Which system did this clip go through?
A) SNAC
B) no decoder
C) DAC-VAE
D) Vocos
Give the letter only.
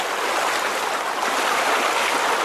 B